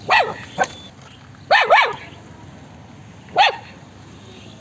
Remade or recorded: recorded